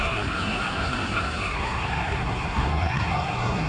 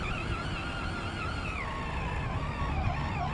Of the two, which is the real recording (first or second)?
second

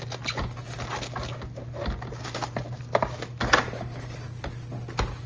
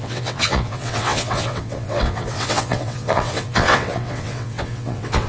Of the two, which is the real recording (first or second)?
first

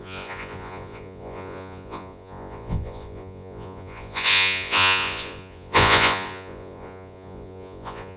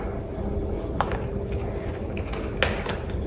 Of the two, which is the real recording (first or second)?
second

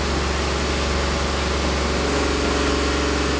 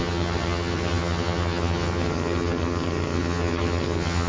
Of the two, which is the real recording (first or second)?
first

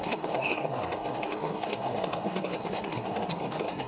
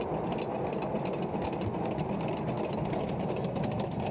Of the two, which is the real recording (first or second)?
second